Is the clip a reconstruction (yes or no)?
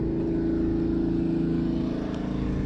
no